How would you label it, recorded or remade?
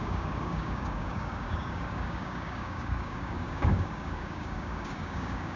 remade